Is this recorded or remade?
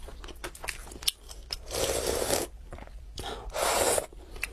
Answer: recorded